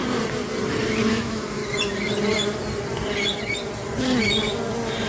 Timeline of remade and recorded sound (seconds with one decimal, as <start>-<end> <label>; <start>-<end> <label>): 0.0-1.1 recorded; 1.1-1.6 remade; 1.6-5.1 recorded